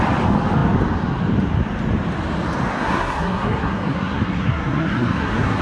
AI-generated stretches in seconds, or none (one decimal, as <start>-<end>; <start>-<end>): 2.7-5.6